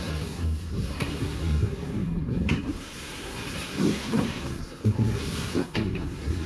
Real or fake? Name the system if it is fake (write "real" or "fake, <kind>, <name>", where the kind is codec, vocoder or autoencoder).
fake, codec, SNAC